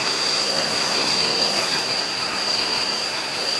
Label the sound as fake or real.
fake